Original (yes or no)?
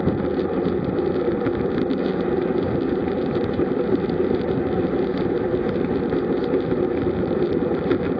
yes